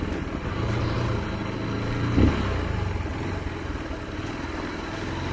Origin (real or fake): real